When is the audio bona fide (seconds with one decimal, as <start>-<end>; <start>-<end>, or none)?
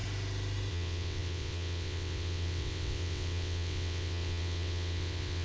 0.0-0.7